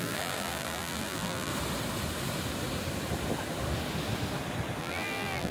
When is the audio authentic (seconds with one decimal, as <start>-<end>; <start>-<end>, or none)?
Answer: 1.5-4.8